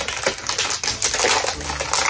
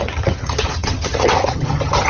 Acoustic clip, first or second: first